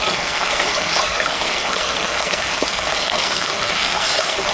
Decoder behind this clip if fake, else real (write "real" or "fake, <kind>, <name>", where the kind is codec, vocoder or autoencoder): fake, codec, SNAC